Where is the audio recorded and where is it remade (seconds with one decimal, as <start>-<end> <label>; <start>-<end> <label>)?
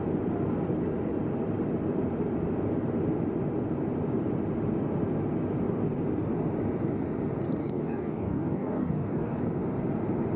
0.0-7.6 recorded; 7.6-9.4 remade; 9.4-10.4 recorded